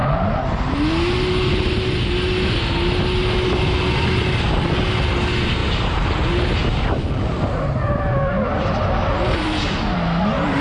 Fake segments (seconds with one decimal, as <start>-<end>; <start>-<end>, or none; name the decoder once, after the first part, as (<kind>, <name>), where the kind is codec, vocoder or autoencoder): 5.6-6.3 (vocoder, BigVGAN v2)